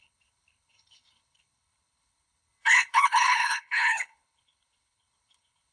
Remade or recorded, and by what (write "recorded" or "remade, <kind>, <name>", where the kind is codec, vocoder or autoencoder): remade, codec, HILCodec